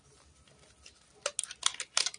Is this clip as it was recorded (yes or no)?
yes